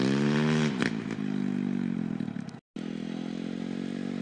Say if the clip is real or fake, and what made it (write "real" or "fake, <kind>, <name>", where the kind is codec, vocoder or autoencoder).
real